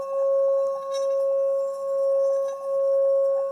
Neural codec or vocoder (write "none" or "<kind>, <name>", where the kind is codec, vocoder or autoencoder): none